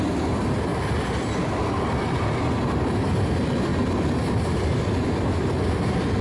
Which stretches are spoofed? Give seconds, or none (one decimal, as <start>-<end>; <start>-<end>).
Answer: none